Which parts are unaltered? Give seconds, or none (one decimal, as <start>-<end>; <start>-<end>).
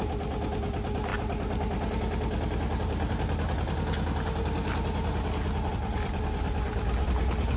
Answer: 0.0-7.6